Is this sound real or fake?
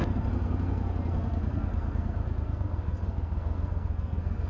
fake